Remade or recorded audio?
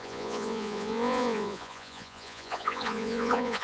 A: remade